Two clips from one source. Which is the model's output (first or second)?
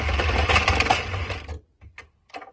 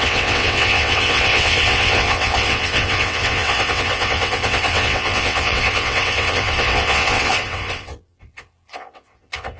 second